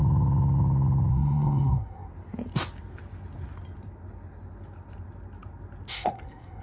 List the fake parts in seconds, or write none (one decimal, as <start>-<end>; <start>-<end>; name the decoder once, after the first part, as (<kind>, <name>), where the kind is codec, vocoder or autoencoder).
1.1-2.1 (codec, SNAC); 5.9-6.6